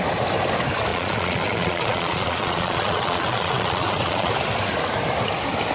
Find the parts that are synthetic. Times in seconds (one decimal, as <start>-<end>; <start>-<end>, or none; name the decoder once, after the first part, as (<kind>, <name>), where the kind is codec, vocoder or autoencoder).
0.9-4.3 (vocoder, Vocos)